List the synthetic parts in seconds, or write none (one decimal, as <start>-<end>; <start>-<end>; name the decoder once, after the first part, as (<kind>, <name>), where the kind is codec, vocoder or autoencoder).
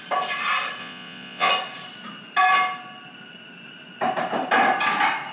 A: 0.8-1.5 (vocoder, Vocos)